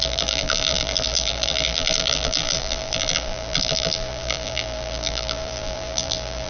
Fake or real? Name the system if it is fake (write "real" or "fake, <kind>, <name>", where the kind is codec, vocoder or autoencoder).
fake, vocoder, BigVGAN v2